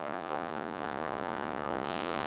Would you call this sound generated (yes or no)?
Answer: yes